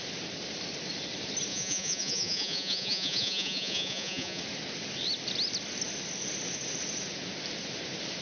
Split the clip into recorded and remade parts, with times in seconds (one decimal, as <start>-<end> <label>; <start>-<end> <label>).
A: 0.0-1.5 recorded; 1.5-4.4 remade; 4.4-8.2 recorded